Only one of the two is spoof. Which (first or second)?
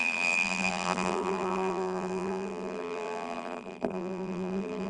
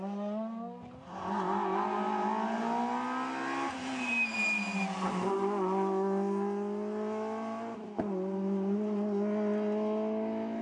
first